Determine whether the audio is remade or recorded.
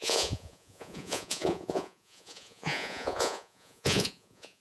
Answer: remade